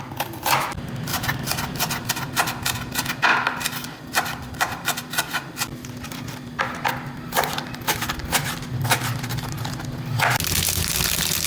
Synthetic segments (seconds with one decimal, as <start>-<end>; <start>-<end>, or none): 1.1-2.1; 3.3-8.2